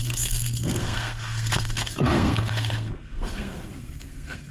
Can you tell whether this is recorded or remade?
remade